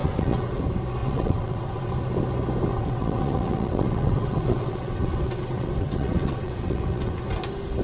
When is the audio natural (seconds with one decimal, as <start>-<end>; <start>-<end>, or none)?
0.6-1.0; 1.9-2.7; 7.2-7.8

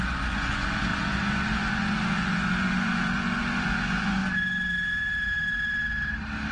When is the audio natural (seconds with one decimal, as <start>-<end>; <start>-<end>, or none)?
4.2-6.5

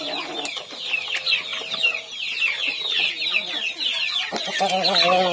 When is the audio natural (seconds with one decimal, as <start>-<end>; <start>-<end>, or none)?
0.0-5.3

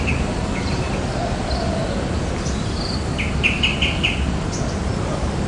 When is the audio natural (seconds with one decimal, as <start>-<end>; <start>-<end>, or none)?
0.0-5.5

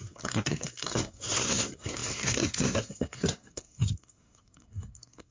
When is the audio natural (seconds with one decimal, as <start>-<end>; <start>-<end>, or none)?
none

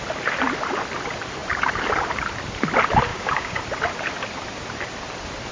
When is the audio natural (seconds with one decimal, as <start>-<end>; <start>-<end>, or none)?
0.0-3.1; 3.6-5.5